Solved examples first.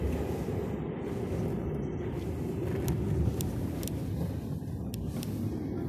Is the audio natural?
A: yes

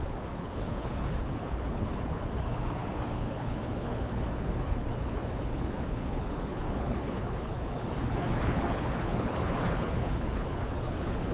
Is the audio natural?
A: no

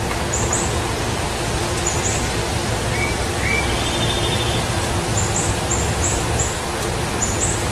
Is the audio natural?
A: yes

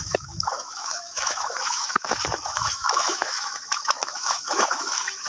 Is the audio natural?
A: no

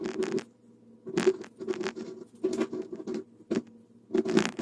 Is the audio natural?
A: yes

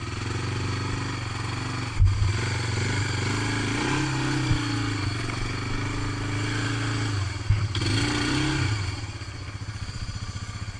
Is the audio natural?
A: yes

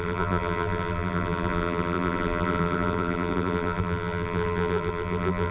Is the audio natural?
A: no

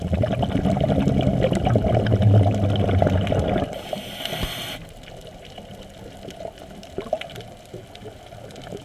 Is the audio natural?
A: yes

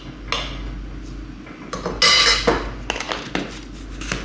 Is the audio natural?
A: yes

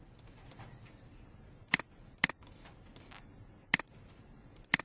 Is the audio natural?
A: yes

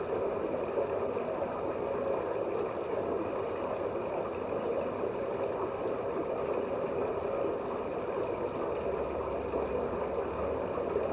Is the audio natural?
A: yes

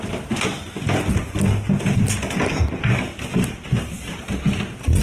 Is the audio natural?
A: yes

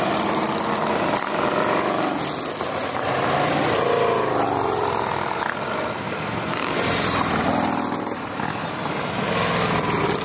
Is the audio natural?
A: yes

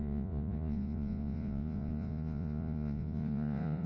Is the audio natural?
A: no